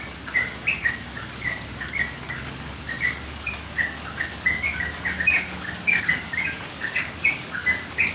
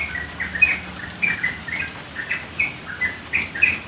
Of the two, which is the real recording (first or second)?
second